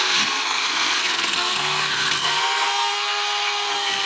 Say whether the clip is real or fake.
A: fake